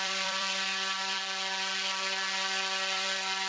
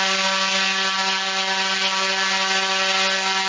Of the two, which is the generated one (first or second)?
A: first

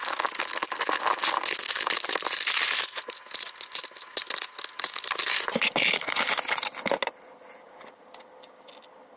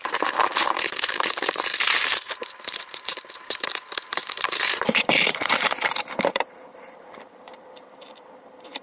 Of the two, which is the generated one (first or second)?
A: second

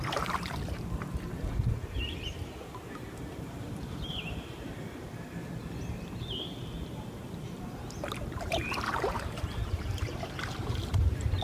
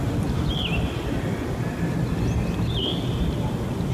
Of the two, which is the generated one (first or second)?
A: first